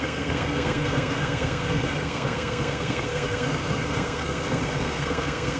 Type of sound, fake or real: fake